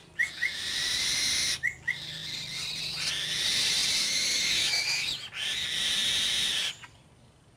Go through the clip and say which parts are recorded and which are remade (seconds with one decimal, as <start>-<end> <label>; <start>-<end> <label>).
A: 0.0-7.6 recorded